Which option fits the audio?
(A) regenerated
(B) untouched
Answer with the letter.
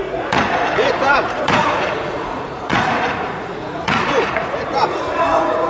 A